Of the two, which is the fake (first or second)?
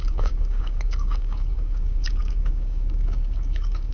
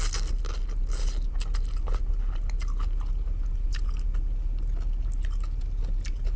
first